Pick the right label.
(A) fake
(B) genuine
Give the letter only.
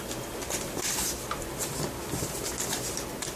B